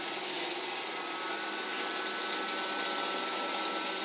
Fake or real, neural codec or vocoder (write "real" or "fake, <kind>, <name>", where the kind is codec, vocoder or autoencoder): real